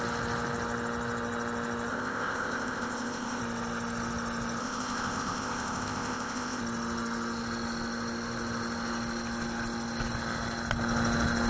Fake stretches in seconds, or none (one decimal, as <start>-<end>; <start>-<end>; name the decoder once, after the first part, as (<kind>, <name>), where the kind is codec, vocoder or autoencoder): 1.9-3.4 (codec, ZipCodec); 4.6-6.6